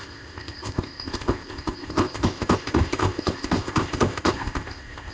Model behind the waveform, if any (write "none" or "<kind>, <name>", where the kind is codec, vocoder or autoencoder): codec, ZipCodec